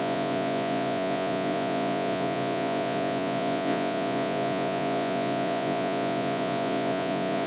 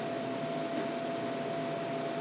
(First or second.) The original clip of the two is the second